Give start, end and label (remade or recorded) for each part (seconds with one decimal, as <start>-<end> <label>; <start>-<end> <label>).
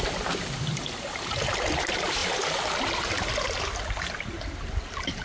0.0-5.2 recorded